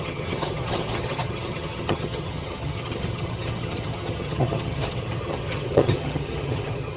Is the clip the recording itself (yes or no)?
no